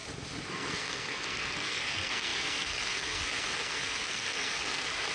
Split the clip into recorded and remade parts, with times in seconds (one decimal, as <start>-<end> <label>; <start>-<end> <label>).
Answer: 0.0-0.5 recorded; 0.5-5.1 remade